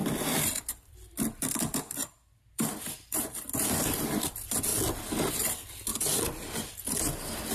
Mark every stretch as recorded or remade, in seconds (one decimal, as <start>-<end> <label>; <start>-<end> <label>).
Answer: 0.0-4.7 remade; 4.7-5.3 recorded; 5.3-5.9 remade; 5.9-7.5 recorded